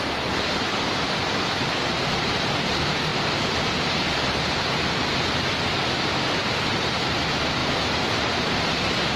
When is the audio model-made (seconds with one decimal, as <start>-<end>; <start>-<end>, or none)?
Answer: 0.0-3.1; 4.3-5.1; 5.6-9.2